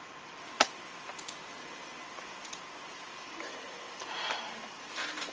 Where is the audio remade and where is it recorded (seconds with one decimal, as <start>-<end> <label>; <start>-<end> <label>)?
0.0-5.3 recorded